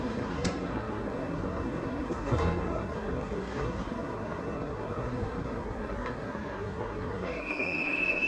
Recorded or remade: remade